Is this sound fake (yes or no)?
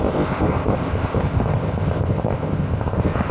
yes